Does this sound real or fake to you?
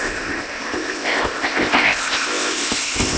fake